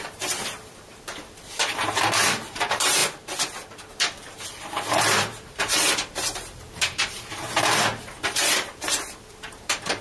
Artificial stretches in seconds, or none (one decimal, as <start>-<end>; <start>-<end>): 0.0-3.0; 3.9-10.0